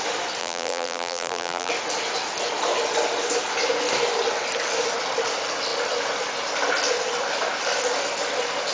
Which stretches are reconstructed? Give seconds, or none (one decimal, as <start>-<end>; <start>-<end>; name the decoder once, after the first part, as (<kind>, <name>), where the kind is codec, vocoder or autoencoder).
0.4-1.7 (vocoder, BigVGAN v2)